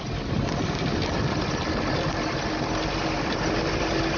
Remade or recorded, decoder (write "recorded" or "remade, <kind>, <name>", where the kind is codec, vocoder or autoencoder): recorded